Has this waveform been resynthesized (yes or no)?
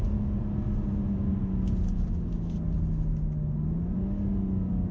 no